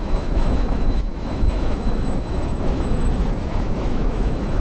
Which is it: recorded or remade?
remade